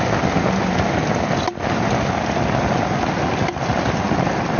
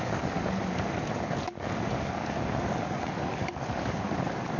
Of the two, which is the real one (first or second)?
first